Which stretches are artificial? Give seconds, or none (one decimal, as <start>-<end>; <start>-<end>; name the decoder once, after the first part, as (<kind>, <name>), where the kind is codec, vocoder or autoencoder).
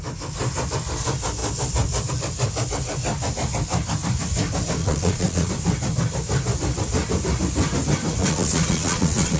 4.8-5.5 (vocoder, Vocos); 8.2-9.4